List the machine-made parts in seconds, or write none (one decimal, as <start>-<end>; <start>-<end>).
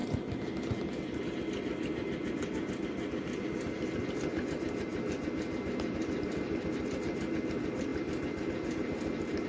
none